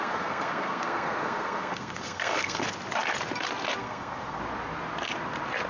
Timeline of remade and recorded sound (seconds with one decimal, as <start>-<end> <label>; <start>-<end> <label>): 0.0-2.6 remade; 2.6-3.8 recorded; 3.8-4.4 remade; 4.4-5.7 recorded